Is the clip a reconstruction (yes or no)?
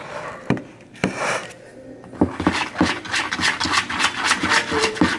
no